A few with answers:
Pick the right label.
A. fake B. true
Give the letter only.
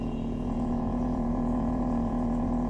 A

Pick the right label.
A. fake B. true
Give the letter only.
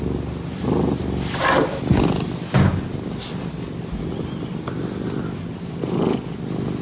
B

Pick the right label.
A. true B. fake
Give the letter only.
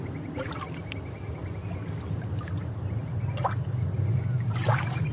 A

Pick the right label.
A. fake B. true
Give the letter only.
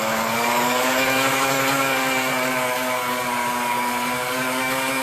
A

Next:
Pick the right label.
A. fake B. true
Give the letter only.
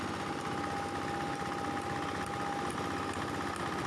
B